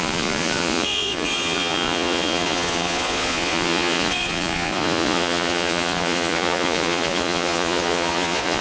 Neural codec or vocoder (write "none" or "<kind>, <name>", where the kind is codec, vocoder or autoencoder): vocoder, Vocos